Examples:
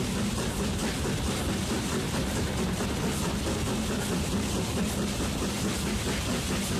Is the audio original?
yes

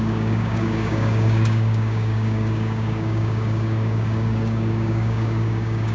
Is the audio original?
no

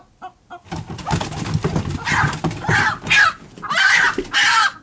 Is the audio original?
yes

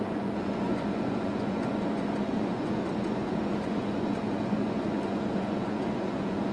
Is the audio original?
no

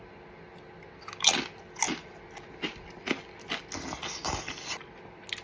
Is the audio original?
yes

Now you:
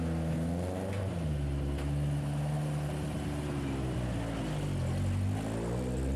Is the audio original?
yes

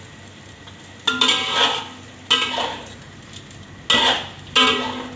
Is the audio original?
yes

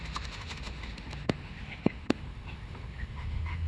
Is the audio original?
no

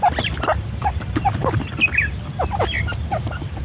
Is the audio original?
no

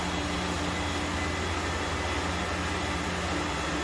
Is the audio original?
yes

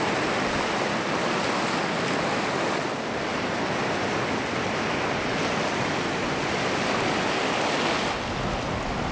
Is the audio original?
yes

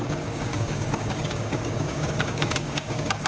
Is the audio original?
no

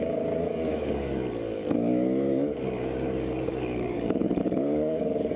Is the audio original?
no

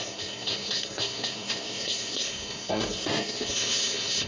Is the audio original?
no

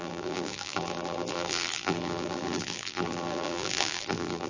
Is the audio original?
no